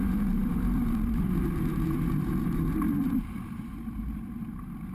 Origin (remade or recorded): remade